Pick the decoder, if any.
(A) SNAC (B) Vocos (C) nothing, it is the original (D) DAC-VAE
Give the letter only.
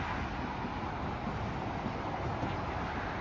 C